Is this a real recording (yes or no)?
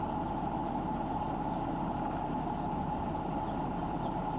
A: yes